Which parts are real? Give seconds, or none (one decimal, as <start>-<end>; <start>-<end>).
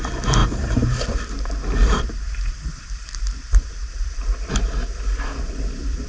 0.0-0.4; 4.1-6.1